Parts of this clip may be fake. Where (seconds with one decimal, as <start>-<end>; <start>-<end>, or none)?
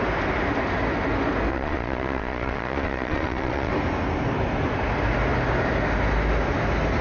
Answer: 1.5-3.7